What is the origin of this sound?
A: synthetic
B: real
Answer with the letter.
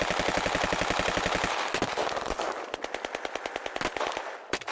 B